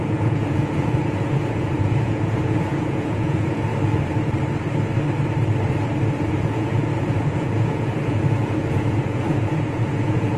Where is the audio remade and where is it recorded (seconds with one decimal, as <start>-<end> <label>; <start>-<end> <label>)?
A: 0.0-3.7 remade; 3.7-6.3 recorded; 6.3-10.4 remade